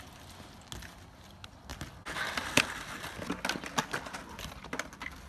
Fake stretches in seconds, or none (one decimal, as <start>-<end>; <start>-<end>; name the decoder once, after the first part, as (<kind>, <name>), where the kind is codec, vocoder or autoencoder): none